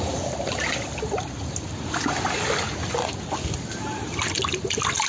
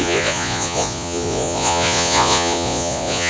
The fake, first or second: second